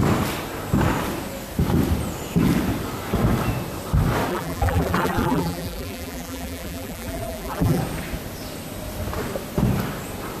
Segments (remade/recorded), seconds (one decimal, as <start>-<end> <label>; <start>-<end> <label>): 0.0-4.3 recorded; 4.3-7.8 remade; 7.8-10.4 recorded